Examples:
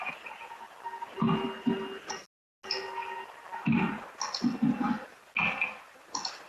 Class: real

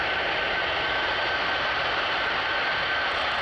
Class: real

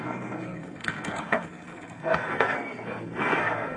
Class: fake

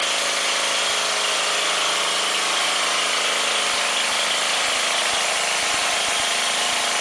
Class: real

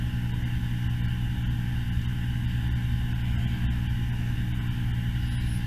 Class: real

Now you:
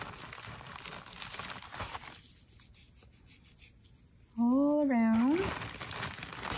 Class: real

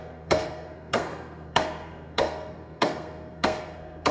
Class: fake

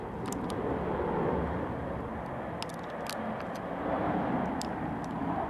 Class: real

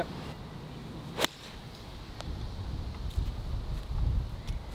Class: real